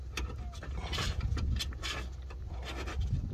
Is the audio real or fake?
real